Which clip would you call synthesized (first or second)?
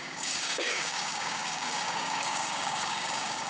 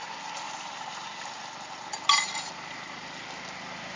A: first